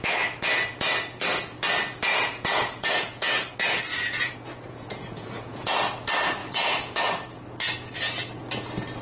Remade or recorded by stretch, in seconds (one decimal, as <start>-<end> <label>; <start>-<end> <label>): 0.0-2.1 recorded; 2.1-3.5 remade; 3.5-3.9 recorded; 3.9-5.8 remade; 5.8-6.4 recorded; 6.4-7.1 remade; 7.1-9.0 recorded